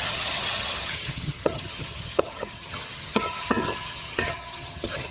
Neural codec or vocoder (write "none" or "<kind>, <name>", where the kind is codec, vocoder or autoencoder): vocoder, HiFi-GAN